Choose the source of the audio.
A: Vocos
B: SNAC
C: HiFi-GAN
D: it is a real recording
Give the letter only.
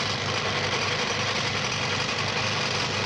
D